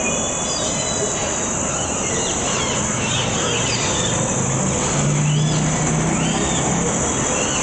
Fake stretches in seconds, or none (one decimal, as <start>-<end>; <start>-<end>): none